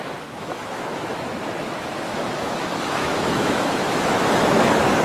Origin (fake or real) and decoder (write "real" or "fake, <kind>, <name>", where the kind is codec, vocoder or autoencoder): fake, autoencoder, DAC-VAE